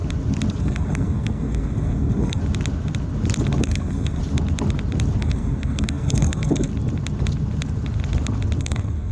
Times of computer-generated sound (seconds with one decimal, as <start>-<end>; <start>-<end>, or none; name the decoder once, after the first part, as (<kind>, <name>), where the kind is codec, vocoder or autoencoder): 0.6-2.4 (codec, SNAC); 3.6-4.2; 5.2-6.7; 8.6-9.1